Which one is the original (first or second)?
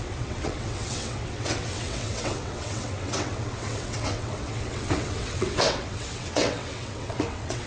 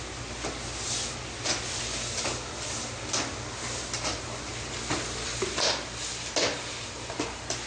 second